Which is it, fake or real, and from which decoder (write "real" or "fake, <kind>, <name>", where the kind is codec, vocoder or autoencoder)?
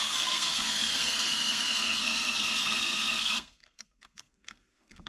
fake, codec, SNAC